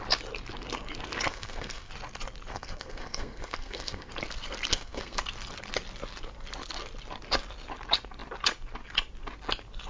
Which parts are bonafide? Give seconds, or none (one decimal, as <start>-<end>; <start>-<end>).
0.0-1.3; 1.9-2.5; 4.1-4.7; 5.2-9.9